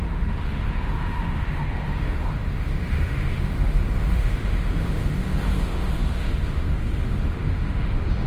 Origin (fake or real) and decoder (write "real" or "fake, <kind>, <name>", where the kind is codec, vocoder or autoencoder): fake, autoencoder, DAC-VAE